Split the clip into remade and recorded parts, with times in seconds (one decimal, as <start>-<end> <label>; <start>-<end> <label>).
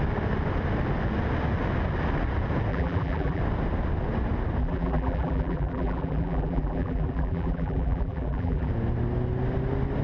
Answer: 0.0-2.7 recorded; 2.7-3.4 remade; 3.4-4.6 recorded; 4.6-8.7 remade; 8.7-10.0 recorded